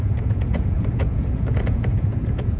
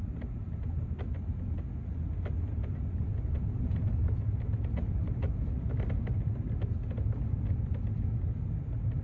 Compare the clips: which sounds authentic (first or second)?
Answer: second